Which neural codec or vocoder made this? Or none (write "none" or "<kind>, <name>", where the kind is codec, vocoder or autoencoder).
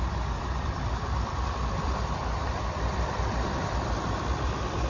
vocoder, BigVGAN v2